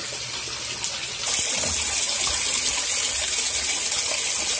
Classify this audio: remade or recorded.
recorded